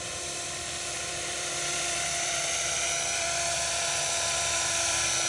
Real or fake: fake